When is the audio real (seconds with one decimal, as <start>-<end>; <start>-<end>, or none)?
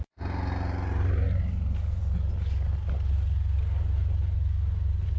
0.0-5.2